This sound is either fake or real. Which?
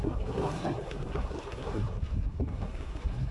fake